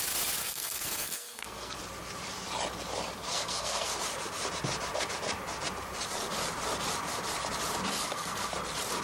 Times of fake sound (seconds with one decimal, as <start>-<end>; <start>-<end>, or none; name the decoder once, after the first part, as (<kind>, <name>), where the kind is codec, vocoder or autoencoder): 0.4-1.8 (codec, SNAC); 3.3-3.9; 7.9-8.5